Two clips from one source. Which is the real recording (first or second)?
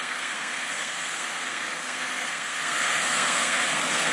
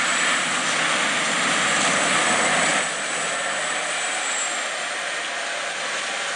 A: second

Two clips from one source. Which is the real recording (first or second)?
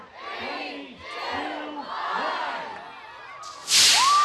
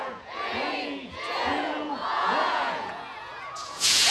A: first